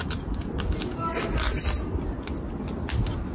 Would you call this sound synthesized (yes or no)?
no